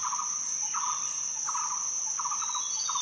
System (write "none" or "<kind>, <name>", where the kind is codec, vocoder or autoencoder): none